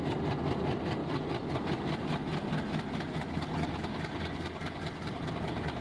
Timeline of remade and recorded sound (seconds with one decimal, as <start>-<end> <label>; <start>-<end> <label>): 0.0-5.8 recorded